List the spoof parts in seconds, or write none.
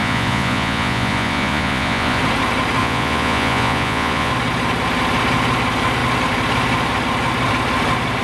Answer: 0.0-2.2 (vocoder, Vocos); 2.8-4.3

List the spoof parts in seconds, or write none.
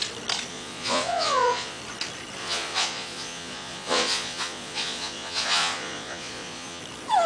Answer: 0.5-1.8 (vocoder, Vocos); 2.4-6.8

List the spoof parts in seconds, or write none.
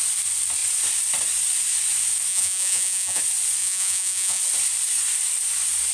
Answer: 2.3-3.2 (vocoder, Vocos); 3.6-4.4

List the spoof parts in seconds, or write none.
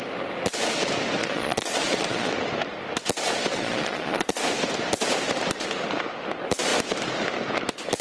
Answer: 1.2-2.3 (vocoder, Vocos); 3.5-4.4